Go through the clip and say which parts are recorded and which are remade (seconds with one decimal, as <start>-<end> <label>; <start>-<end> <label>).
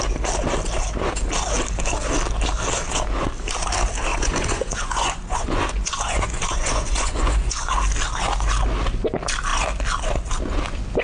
0.0-4.1 recorded; 4.1-7.7 remade; 7.7-11.0 recorded